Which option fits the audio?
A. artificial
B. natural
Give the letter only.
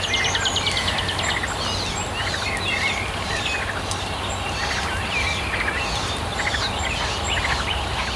B